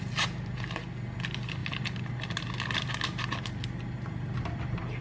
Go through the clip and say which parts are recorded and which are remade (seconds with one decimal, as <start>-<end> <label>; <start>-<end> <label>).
0.0-5.0 recorded

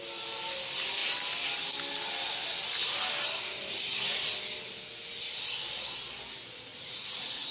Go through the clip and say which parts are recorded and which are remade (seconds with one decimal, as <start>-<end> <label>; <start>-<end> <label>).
0.0-6.7 recorded; 6.7-7.5 remade

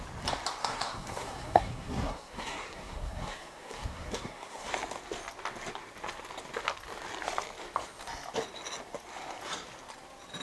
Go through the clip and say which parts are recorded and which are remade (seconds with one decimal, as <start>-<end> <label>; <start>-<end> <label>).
0.0-0.6 recorded; 0.6-4.7 remade; 4.7-10.4 recorded

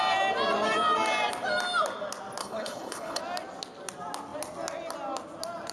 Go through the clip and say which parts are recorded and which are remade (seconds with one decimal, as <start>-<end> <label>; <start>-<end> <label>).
0.0-2.4 recorded; 2.4-3.2 remade; 3.2-5.7 recorded